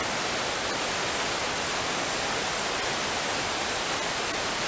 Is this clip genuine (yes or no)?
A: yes